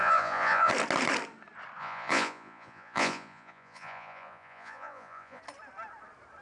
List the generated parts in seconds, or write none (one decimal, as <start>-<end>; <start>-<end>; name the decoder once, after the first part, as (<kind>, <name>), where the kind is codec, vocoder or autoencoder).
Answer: 0.0-0.7 (vocoder, Vocos); 1.8-5.4